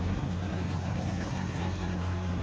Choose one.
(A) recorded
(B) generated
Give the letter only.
B